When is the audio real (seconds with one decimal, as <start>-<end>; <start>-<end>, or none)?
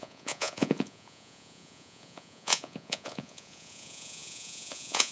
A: none